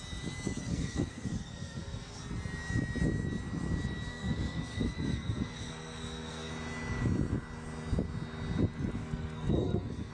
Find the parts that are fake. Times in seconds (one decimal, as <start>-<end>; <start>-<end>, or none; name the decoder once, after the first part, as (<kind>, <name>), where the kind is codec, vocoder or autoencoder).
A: 0.6-2.2 (codec, SNAC); 4.1-6.5; 9.0-10.1